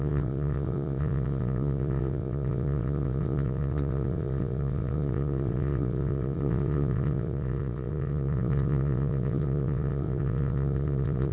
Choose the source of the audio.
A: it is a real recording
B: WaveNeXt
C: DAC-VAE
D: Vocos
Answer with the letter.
B